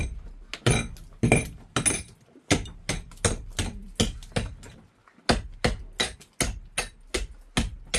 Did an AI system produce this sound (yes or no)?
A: no